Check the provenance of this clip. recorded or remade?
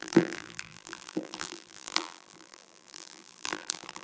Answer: remade